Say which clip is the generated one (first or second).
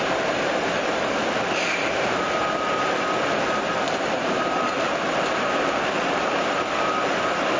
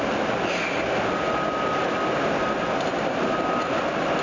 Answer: first